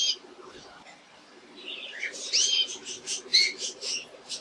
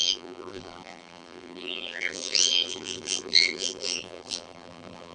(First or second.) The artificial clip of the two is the second